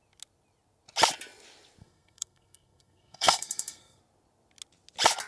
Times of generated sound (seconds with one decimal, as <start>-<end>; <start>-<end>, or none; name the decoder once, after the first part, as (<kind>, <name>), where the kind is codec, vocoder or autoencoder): 1.8-4.0 (codec, SNAC)